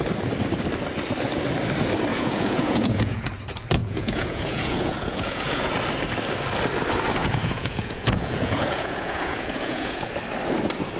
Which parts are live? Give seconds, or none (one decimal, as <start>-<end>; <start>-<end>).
0.0-2.1; 3.3-3.8; 5.7-7.2; 10.1-11.0